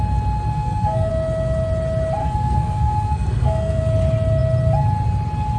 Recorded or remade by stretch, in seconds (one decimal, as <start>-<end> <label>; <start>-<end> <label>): 0.0-0.5 recorded; 0.5-1.1 remade; 1.1-2.2 recorded; 2.2-3.8 remade; 3.8-5.6 recorded